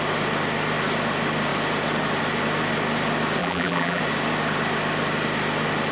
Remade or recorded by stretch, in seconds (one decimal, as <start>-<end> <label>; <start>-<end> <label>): 0.0-3.4 recorded; 3.4-4.0 remade; 4.0-5.9 recorded

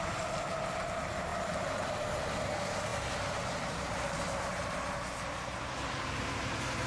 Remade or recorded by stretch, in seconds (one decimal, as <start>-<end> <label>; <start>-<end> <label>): 0.0-6.9 recorded

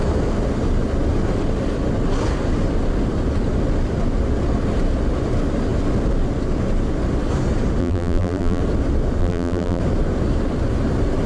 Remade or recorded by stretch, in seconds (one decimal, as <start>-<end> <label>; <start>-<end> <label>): 0.0-7.8 recorded; 7.8-8.6 remade; 8.6-9.2 recorded; 9.2-9.8 remade; 9.8-11.3 recorded